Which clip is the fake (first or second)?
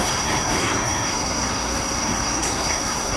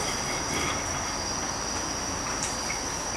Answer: first